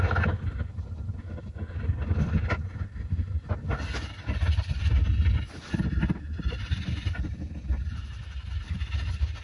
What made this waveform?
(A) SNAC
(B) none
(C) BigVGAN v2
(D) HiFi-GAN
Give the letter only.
B